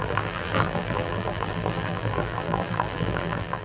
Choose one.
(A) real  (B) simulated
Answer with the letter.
B